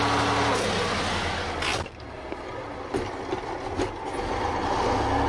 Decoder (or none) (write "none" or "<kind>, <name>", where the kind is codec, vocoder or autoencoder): none